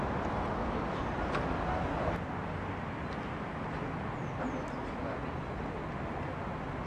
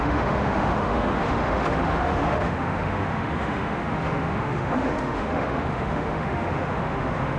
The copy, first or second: second